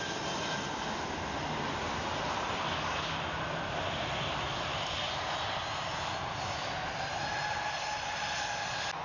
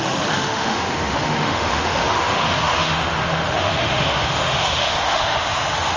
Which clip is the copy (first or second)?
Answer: second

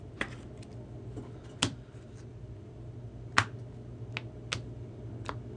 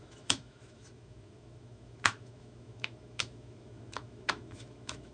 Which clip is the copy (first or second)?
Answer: second